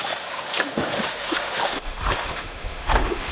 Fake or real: fake